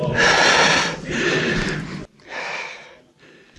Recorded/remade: recorded